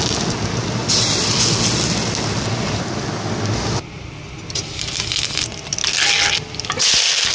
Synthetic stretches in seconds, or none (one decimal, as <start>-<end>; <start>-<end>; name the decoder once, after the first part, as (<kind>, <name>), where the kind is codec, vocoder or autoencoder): none